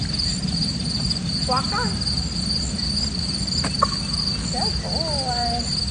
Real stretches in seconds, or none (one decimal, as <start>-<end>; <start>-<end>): 0.0-5.9